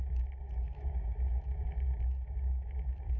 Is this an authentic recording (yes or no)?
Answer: no